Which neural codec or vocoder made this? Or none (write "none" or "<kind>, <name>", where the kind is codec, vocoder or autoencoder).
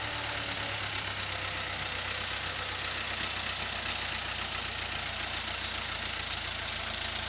none